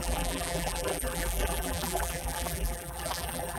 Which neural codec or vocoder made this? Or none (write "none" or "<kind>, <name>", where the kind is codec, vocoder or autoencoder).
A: vocoder, BigVGAN v2